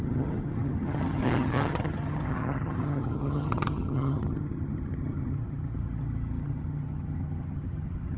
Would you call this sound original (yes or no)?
no